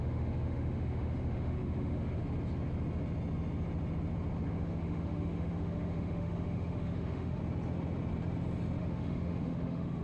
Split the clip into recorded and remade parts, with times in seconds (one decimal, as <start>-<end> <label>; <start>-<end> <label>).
0.0-2.2 remade; 2.2-4.5 recorded; 4.5-7.4 remade; 7.4-8.8 recorded; 8.8-10.0 remade

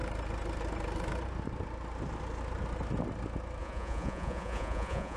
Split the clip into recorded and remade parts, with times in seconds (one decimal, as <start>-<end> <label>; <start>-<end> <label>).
0.0-3.6 recorded; 3.6-5.2 remade

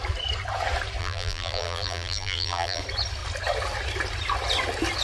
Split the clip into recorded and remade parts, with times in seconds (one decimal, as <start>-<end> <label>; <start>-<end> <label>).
0.0-1.0 recorded; 1.0-2.8 remade; 2.8-5.0 recorded

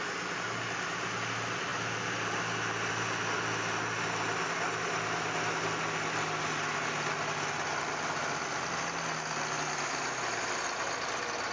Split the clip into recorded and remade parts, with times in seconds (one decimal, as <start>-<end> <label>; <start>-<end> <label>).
0.0-11.5 recorded

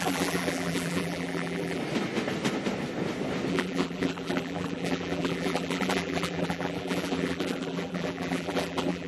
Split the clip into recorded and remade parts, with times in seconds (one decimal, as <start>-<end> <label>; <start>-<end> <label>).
0.0-1.8 remade; 1.8-3.5 recorded; 3.5-9.1 remade

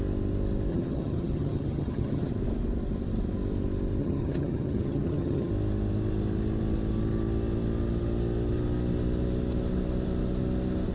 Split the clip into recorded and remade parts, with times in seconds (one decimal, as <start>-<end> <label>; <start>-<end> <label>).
0.0-0.7 recorded; 0.7-2.3 remade; 2.3-4.0 recorded; 4.0-5.5 remade; 5.5-10.9 recorded

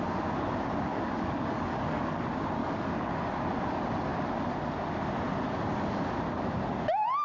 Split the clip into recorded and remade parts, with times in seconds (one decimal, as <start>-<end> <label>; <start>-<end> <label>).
0.0-0.9 recorded; 0.9-2.2 remade; 2.2-2.6 recorded; 2.6-3.2 remade; 3.2-7.2 recorded